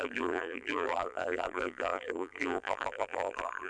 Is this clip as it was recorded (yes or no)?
no